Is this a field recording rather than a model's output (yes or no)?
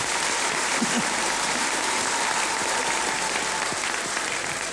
no